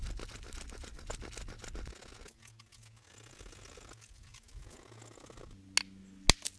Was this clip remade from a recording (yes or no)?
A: no